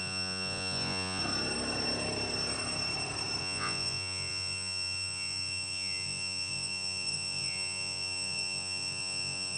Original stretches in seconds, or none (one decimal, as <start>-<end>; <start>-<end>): 1.2-3.4